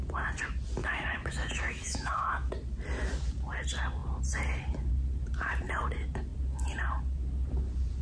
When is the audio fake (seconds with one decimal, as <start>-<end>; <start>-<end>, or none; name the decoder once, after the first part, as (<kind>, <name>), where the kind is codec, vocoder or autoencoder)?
0.8-2.5 (autoencoder, DAC-VAE)